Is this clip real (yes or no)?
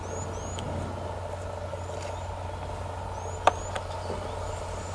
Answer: yes